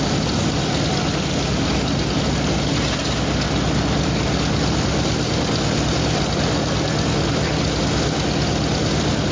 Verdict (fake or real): real